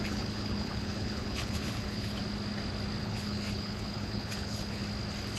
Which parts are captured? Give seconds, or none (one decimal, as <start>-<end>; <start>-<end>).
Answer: 2.2-3.0; 4.8-5.4